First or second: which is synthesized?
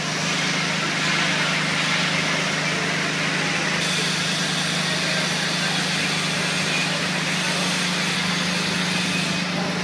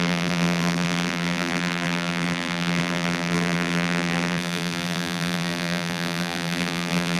second